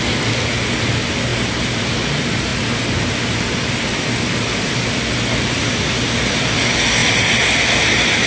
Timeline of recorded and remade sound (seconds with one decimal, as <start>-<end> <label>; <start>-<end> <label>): 0.0-8.3 recorded